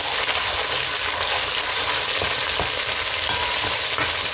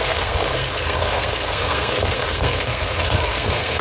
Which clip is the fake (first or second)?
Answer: second